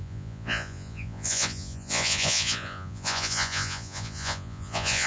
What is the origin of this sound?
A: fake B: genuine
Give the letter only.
A